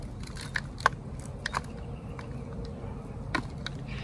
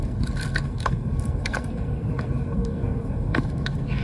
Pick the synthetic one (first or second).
second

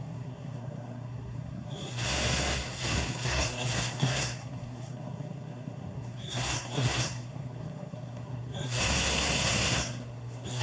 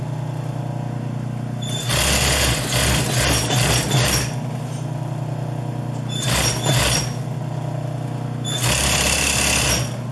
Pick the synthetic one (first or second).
first